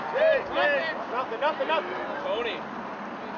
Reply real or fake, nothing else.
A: real